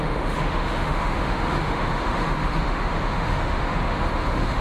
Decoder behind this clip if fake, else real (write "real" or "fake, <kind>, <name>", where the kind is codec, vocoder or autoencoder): fake, autoencoder, DAC-VAE